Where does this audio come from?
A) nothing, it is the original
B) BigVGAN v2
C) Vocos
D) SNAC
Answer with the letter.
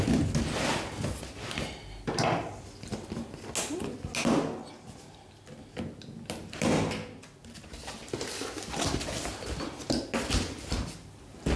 A